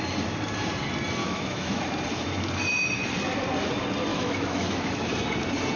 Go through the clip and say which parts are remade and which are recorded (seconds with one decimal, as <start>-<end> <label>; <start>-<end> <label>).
0.0-1.2 recorded; 1.2-1.8 remade; 1.8-4.1 recorded; 4.1-5.1 remade; 5.1-5.8 recorded